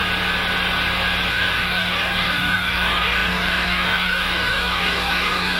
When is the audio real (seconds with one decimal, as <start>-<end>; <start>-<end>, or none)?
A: 0.0-1.3